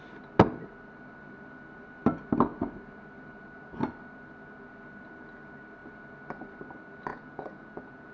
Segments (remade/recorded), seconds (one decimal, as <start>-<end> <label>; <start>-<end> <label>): 0.0-7.1 recorded; 7.1-8.1 remade